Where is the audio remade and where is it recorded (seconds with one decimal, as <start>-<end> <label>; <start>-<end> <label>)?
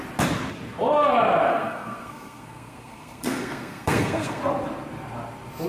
0.0-1.5 recorded; 1.5-4.4 remade; 4.4-5.7 recorded